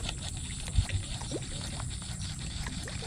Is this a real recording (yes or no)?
yes